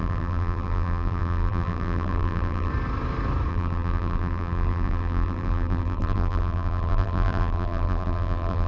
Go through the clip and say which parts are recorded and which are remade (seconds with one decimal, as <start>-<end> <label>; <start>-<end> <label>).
0.0-2.7 remade; 2.7-3.5 recorded; 3.5-8.7 remade